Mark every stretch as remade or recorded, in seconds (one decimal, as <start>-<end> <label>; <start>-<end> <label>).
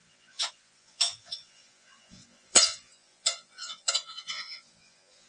0.0-5.3 remade